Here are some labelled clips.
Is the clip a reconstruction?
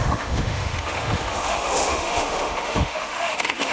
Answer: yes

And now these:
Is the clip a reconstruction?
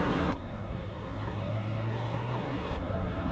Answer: yes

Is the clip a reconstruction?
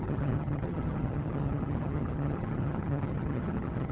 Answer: yes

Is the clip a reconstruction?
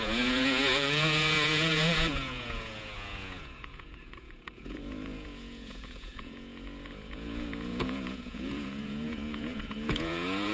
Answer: yes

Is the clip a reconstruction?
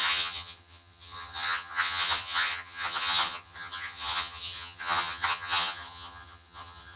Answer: yes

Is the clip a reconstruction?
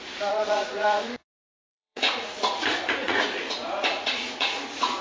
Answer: yes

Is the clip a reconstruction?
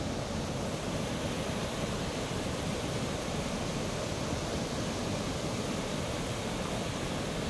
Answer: no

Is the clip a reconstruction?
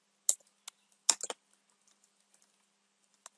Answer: no